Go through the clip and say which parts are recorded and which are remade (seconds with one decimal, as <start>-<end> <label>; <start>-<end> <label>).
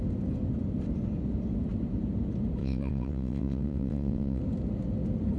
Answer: 0.0-2.6 recorded; 2.6-4.4 remade; 4.4-5.4 recorded